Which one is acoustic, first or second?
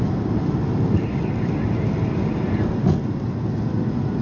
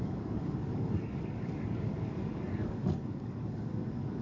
first